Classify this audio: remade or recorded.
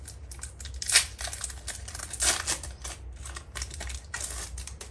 recorded